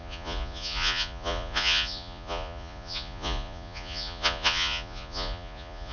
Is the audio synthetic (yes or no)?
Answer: yes